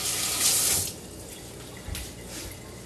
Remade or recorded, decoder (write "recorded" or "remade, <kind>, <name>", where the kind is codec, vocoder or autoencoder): recorded